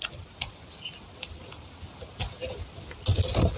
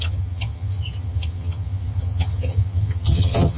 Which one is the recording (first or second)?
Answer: first